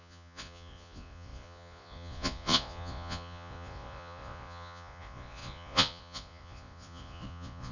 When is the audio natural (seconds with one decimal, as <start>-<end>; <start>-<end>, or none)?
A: none